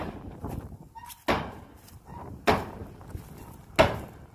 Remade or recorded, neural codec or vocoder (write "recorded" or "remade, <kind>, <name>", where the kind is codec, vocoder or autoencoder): recorded